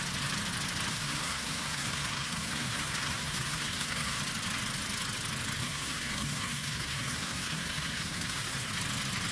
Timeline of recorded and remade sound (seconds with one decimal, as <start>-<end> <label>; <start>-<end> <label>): 0.0-0.9 recorded; 0.9-4.2 remade; 4.2-5.6 recorded; 5.6-8.7 remade; 8.7-9.3 recorded